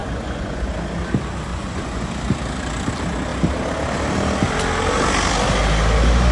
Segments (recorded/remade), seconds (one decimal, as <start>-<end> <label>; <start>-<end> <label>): 0.0-0.7 remade; 0.7-1.5 recorded; 1.5-2.1 remade; 2.1-6.3 recorded